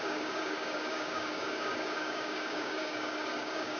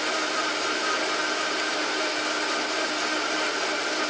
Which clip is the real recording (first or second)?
second